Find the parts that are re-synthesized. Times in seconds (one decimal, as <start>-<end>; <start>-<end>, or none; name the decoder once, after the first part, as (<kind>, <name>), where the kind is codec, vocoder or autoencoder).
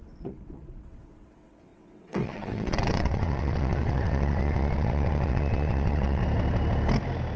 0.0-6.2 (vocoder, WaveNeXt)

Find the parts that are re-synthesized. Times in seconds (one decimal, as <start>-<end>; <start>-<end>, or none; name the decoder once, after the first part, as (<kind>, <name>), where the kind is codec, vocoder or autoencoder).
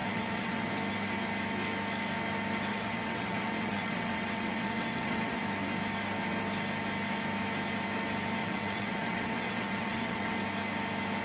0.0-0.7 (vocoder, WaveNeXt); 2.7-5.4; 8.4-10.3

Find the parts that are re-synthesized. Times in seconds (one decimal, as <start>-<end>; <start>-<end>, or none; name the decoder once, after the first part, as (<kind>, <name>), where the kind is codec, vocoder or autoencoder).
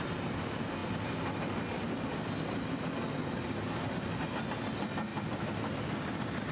none